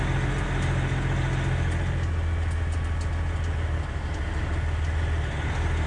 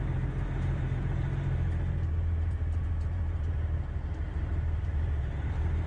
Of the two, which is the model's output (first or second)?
second